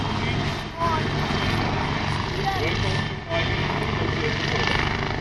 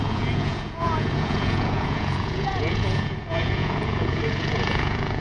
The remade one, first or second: second